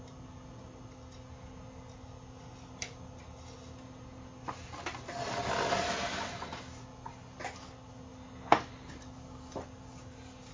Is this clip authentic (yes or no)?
yes